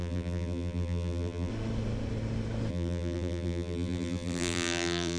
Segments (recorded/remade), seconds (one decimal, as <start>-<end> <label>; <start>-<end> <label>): 0.0-1.5 remade; 1.5-2.7 recorded; 2.7-5.2 remade